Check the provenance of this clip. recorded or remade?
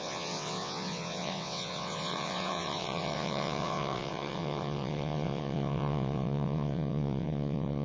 remade